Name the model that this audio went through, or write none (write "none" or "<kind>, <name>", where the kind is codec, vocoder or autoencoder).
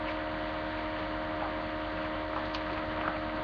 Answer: none